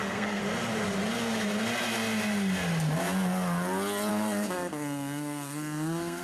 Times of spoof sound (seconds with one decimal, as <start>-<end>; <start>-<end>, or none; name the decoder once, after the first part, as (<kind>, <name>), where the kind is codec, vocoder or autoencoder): 0.0-0.4 (codec, SNAC); 4.1-6.2